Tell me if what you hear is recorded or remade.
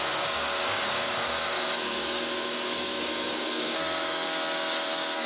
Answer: remade